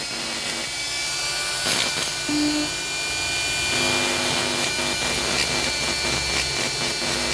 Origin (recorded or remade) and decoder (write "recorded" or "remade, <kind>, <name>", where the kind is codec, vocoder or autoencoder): recorded